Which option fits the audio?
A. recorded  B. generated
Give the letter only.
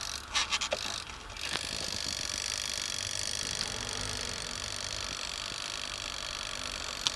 A